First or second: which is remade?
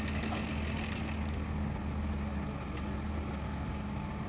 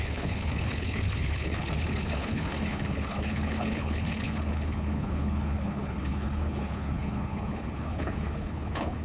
second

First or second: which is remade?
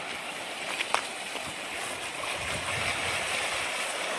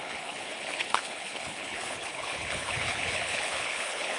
second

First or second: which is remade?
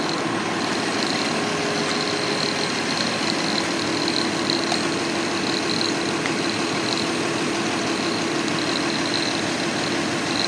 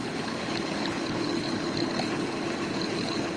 second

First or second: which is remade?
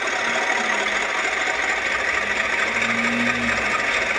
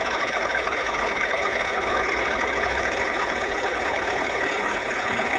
second